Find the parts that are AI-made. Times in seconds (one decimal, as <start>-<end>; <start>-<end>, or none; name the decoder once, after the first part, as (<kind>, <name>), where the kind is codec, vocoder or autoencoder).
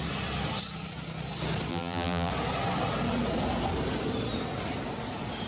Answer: 1.7-2.3 (vocoder, BigVGAN v2)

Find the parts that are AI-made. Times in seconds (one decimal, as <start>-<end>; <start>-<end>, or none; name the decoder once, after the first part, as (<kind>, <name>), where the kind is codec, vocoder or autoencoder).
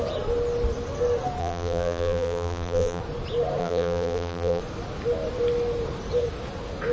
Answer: 1.4-3.0 (vocoder, BigVGAN v2); 3.6-4.6